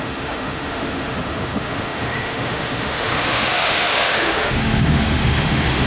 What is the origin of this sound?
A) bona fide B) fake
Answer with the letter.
B